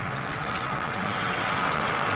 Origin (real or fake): fake